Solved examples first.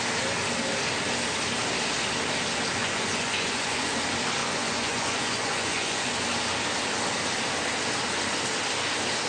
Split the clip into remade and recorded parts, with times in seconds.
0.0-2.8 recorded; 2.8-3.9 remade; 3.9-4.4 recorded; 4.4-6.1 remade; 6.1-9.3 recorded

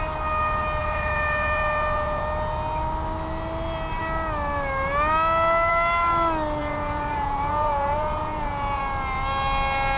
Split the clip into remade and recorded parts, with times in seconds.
0.0-0.8 recorded; 0.8-2.2 remade; 2.2-6.6 recorded; 6.6-8.8 remade; 8.8-10.0 recorded

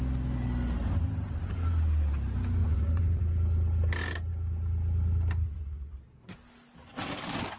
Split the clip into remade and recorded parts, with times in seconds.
0.0-2.6 recorded; 2.6-3.2 remade; 3.2-7.6 recorded